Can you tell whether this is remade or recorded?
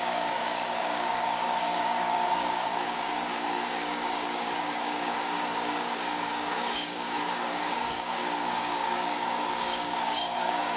remade